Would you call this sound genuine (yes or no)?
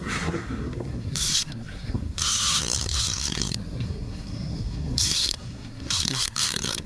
no